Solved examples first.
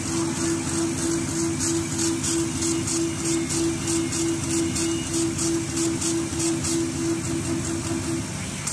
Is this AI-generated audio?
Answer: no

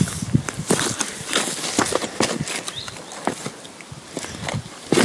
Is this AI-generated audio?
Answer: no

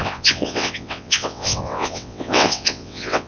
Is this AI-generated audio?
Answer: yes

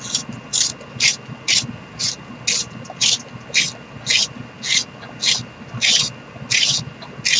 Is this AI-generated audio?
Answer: no